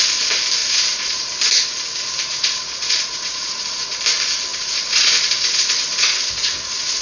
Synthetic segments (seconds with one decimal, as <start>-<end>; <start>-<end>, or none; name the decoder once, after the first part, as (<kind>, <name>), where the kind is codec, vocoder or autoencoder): 0.6-1.2 (vocoder, Vocos); 2.3-4.0; 4.5-7.0